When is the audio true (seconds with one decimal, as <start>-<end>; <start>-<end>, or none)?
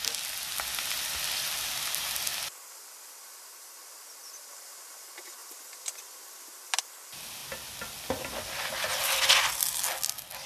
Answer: 0.0-2.3; 4.5-5.4; 6.8-10.5